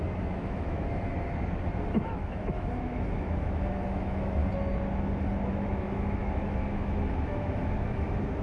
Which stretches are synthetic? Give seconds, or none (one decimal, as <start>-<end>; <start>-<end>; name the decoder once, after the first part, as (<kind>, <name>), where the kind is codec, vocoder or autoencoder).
0.0-1.1 (autoencoder, DAC-VAE); 1.9-4.4; 5.5-8.4